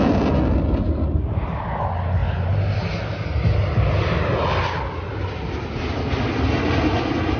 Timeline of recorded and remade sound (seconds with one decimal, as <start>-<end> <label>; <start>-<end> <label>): 0.0-7.4 recorded